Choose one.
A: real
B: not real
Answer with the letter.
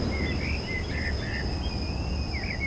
A